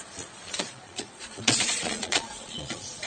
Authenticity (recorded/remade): remade